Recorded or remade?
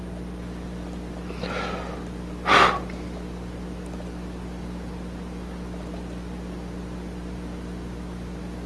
recorded